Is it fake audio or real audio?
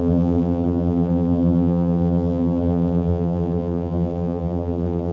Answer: fake